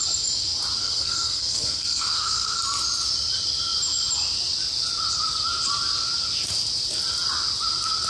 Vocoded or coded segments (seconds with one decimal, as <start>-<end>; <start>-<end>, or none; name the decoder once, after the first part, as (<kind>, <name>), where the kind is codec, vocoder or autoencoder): 0.8-2.6 (codec, SNAC)